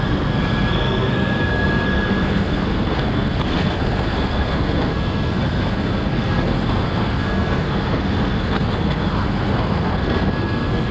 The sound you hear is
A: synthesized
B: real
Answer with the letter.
A